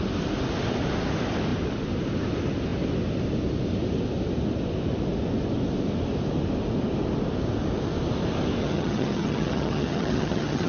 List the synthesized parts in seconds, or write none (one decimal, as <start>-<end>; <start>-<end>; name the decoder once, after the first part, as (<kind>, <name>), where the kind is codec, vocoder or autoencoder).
8.6-10.7 (vocoder, HiFi-GAN)